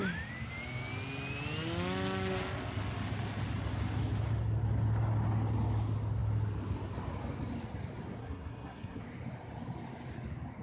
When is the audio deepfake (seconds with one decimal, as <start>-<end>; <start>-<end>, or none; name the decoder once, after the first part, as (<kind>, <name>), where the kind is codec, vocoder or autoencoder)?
8.2-9.0 (codec, SNAC)